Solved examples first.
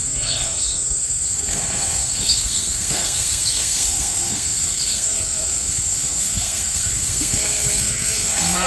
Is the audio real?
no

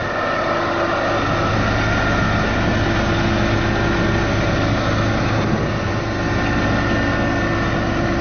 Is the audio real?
yes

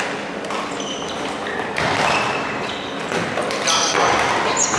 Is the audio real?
yes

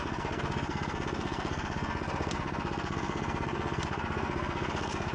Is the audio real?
no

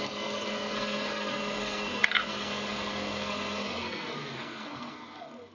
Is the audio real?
no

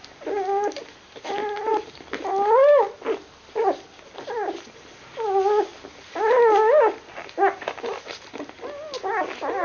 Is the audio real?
yes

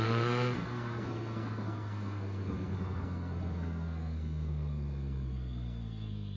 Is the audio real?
no